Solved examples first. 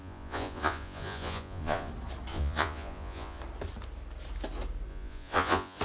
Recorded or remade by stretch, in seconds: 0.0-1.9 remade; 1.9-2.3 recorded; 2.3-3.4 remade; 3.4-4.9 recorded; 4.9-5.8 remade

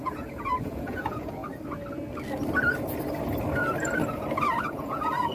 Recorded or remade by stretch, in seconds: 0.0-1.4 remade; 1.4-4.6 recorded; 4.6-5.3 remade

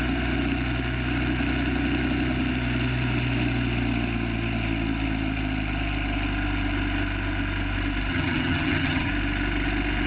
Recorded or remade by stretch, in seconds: 0.0-8.1 recorded; 8.1-9.1 remade; 9.1-10.1 recorded

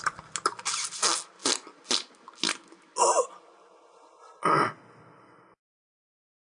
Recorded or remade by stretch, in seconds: 0.0-6.5 recorded